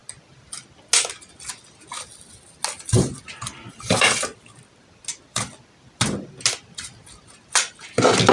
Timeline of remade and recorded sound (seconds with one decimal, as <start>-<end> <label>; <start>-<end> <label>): 0.0-8.3 recorded